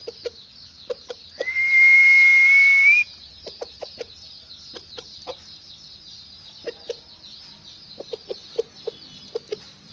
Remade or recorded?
recorded